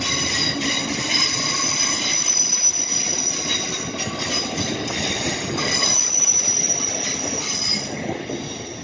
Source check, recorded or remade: recorded